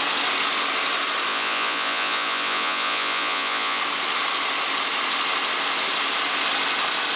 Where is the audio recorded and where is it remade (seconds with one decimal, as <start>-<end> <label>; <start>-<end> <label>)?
0.0-1.3 recorded; 1.3-3.8 remade; 3.8-7.2 recorded